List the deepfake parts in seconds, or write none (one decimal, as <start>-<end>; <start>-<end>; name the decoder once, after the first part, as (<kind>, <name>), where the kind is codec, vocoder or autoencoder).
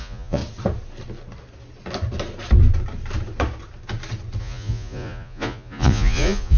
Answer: 0.0-0.4 (vocoder, Vocos); 4.4-6.6